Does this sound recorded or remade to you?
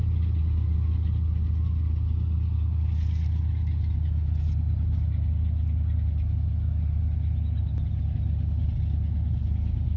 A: recorded